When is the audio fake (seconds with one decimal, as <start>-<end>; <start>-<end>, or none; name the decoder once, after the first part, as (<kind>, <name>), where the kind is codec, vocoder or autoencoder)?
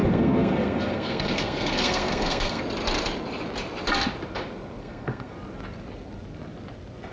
0.0-2.6 (codec, SNAC); 4.8-5.3